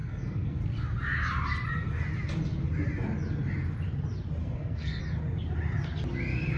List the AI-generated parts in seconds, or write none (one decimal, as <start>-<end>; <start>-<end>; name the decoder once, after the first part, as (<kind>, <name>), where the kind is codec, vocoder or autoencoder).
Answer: 0.0-0.6 (codec, SNAC); 4.4-5.0